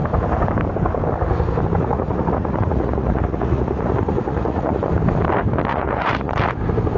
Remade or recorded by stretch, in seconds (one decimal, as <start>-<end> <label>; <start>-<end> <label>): 0.0-1.8 recorded; 1.8-4.8 remade; 4.8-5.7 recorded; 5.7-6.4 remade; 6.4-7.0 recorded

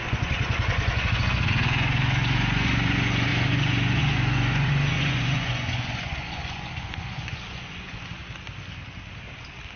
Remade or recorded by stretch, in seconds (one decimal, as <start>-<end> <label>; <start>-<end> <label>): 0.0-8.2 remade; 8.2-9.8 recorded

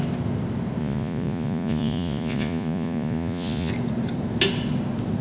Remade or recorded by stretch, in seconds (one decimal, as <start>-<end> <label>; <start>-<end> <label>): 0.0-0.8 recorded; 0.8-3.7 remade; 3.7-5.2 recorded

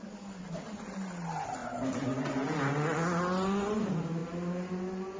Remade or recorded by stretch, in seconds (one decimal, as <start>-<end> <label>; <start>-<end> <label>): 0.0-5.2 recorded

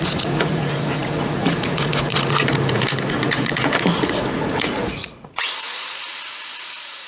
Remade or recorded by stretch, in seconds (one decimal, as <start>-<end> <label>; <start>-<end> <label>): 0.0-7.1 remade